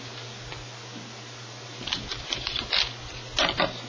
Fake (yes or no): no